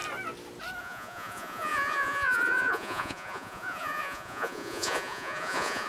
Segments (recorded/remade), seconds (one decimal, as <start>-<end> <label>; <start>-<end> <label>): 0.0-0.8 recorded; 0.8-5.9 remade